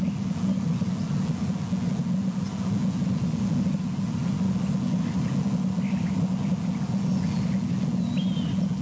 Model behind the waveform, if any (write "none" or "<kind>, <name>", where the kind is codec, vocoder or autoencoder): none